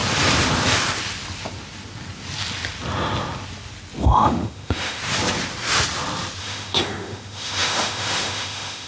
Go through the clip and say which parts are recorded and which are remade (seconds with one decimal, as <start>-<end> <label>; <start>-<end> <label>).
0.0-4.0 recorded; 4.0-5.0 remade; 5.0-6.4 recorded; 6.4-8.9 remade